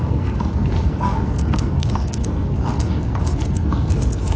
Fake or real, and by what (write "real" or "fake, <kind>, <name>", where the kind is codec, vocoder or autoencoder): fake, codec, SNAC